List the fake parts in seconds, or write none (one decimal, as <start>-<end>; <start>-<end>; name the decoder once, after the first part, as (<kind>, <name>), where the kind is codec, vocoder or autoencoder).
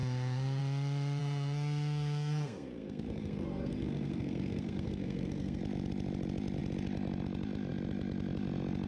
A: 0.0-0.6 (codec, SNAC); 1.2-5.6